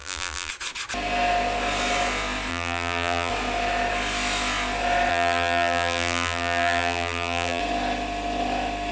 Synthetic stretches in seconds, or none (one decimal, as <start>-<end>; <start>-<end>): 0.0-0.5; 2.5-3.3; 5.1-7.6